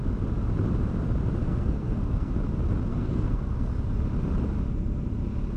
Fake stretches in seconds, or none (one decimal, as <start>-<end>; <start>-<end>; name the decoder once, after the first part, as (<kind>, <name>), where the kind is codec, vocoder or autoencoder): 1.4-2.3 (codec, SNAC); 2.9-3.7